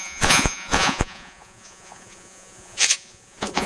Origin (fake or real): fake